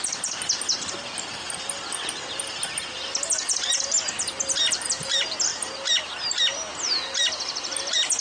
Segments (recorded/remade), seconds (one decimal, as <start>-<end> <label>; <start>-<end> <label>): 0.0-8.2 recorded